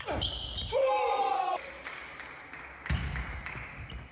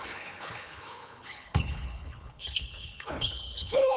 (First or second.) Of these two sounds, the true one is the first